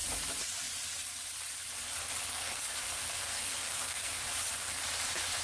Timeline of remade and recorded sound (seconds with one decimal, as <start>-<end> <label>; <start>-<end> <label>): 0.0-2.3 recorded; 2.3-4.1 remade; 4.1-5.4 recorded